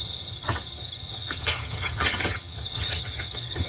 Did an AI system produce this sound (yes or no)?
yes